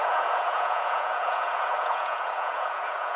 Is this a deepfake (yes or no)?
yes